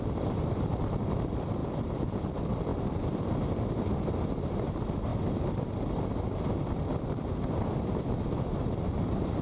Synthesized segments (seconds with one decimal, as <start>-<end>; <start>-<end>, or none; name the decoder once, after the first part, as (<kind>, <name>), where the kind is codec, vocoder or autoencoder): 0.0-5.1 (vocoder, BigVGAN v2); 7.1-9.4